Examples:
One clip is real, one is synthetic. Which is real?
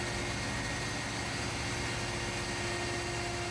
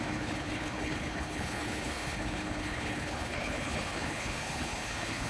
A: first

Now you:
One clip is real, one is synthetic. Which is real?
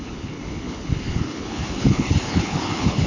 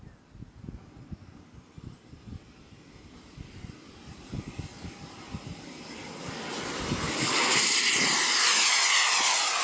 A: second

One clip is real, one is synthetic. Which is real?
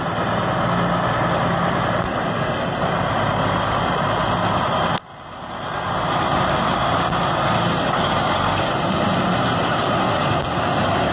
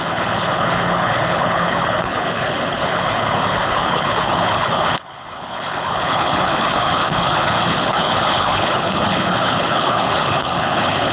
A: first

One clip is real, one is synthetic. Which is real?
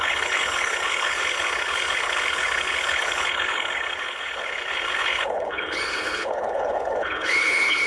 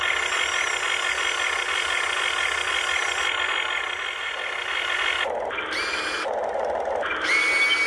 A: second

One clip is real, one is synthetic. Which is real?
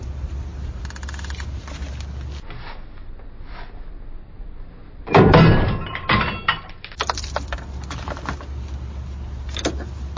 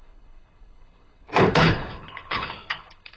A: first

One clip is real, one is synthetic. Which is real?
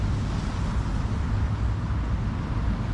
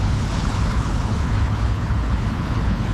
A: first